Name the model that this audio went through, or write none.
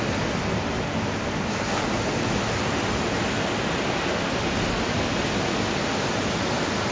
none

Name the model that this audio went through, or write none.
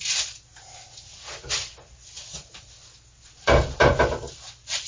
none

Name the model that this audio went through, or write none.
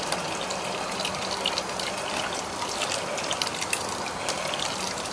none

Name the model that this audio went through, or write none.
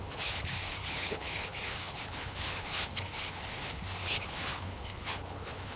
codec, HILCodec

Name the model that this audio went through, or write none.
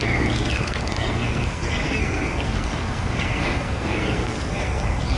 codec, SNAC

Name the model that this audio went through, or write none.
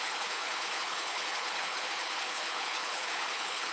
codec, HILCodec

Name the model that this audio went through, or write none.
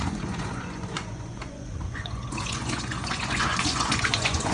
vocoder, Vocos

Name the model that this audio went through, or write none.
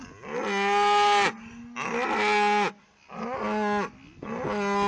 none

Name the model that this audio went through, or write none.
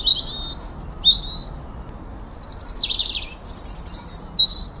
none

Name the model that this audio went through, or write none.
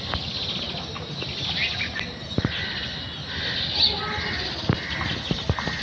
none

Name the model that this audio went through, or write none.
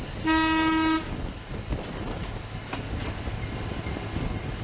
none